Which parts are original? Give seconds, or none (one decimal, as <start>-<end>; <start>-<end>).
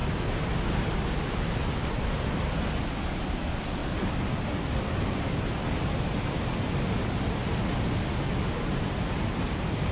0.0-9.9